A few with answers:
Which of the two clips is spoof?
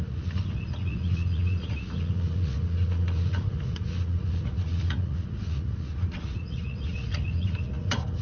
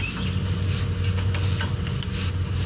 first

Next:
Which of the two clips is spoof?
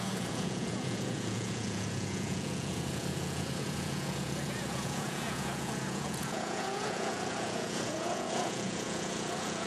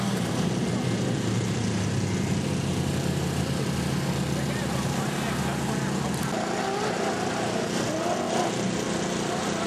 first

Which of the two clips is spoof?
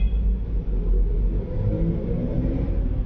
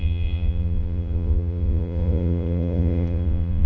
second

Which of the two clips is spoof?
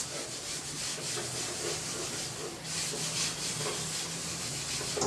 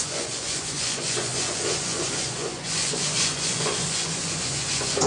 second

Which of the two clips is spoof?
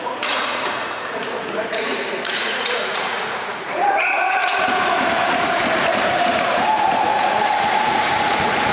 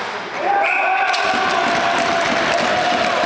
first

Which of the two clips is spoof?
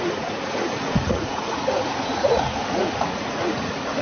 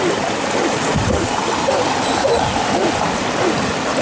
first